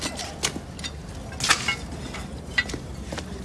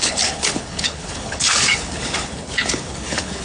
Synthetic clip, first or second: second